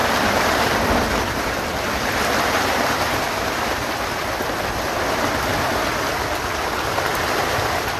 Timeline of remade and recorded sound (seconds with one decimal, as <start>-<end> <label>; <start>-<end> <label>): 0.0-4.3 remade; 4.3-8.0 recorded